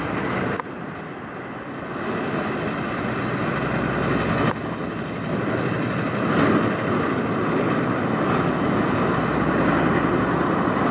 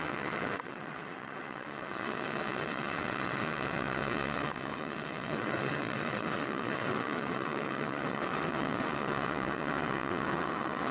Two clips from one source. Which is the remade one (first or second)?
second